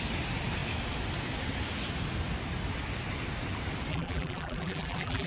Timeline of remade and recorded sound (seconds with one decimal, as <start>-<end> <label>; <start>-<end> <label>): 0.0-3.9 recorded; 3.9-5.3 remade